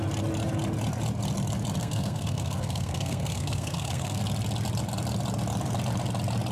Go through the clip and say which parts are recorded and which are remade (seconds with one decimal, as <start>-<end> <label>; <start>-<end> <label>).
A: 0.0-1.8 recorded; 1.8-4.2 remade; 4.2-6.5 recorded